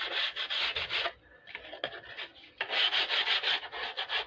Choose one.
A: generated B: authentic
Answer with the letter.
B